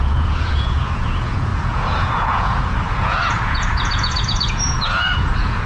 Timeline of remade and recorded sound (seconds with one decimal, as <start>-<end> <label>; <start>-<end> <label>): 0.0-5.7 remade